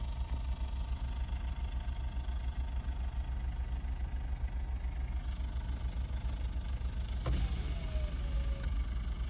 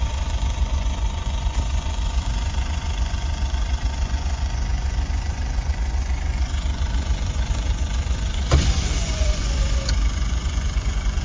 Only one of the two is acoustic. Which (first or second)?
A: first